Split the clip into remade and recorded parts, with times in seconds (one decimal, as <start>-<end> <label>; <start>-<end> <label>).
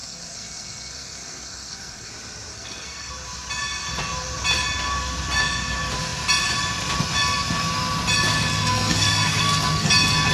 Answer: 0.0-2.1 remade; 2.1-2.5 recorded; 2.5-3.1 remade; 3.1-8.5 recorded; 8.5-9.9 remade; 9.9-10.3 recorded